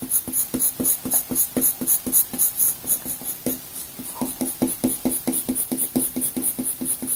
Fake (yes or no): no